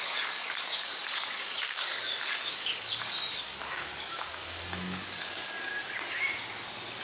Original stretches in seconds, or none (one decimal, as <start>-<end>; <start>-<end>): 5.7-7.0